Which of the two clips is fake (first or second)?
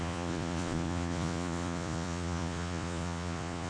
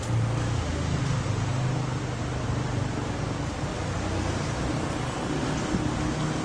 first